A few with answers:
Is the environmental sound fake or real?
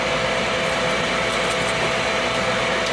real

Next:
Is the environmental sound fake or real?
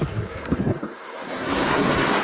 fake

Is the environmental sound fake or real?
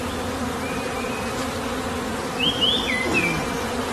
real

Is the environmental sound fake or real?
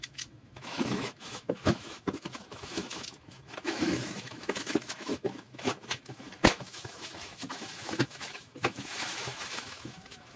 fake